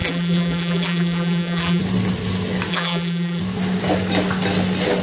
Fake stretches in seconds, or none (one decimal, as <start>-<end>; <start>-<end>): 0.0-1.8; 2.7-3.4